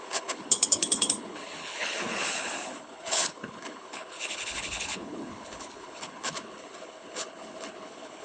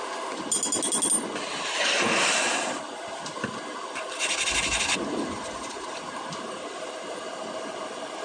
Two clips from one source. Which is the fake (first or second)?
first